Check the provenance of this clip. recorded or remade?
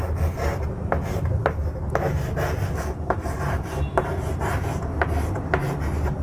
recorded